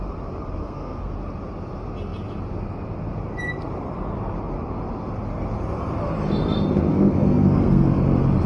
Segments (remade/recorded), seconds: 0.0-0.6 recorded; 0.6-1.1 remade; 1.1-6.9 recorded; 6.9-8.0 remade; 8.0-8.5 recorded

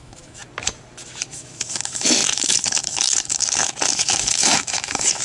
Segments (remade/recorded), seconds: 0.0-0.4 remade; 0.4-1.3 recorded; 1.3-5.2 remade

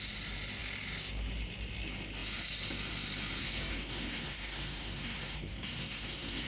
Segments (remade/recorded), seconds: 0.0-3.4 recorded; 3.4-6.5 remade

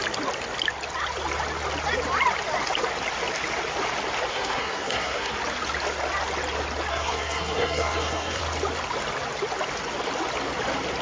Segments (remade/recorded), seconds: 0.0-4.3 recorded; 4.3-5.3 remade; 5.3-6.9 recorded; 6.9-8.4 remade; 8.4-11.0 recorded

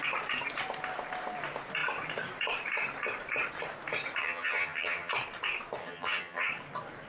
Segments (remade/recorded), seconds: 0.0-4.2 recorded; 4.2-5.1 remade; 5.1-5.8 recorded; 5.8-6.5 remade; 6.5-7.1 recorded

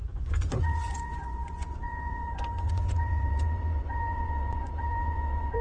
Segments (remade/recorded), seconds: 0.0-5.6 remade

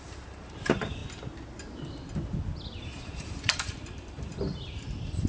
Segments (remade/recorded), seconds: 0.0-1.0 remade; 1.0-2.8 recorded; 2.8-5.3 remade

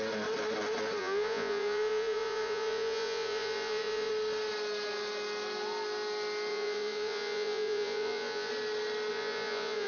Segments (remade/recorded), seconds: 0.0-1.0 recorded; 1.0-4.1 remade; 4.1-6.5 recorded; 6.5-8.5 remade; 8.5-9.1 recorded; 9.1-9.9 remade